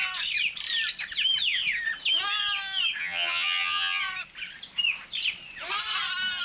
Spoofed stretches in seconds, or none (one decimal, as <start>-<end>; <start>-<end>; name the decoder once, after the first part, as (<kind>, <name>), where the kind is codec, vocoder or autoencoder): 3.0-4.0 (vocoder, HiFi-GAN)